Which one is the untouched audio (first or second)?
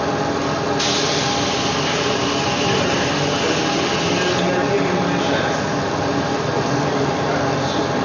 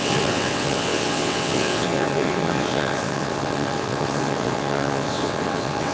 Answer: first